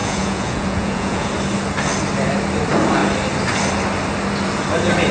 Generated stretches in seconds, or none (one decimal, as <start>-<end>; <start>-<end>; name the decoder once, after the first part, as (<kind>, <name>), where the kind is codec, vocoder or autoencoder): 0.0-1.3 (vocoder, Vocos)